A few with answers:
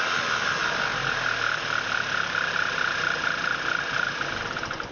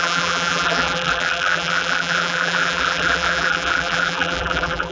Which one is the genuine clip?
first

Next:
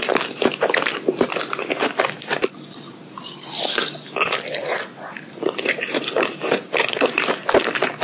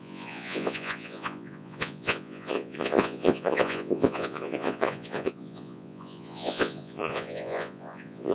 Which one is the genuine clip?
first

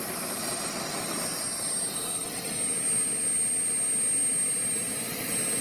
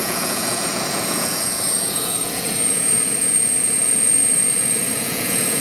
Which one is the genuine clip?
first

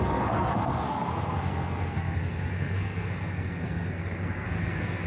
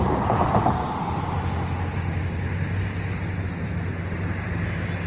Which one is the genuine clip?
second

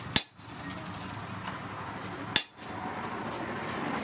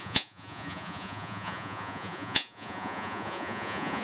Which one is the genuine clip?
first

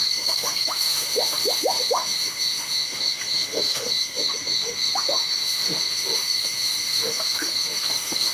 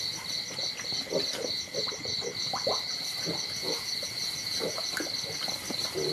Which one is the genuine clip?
second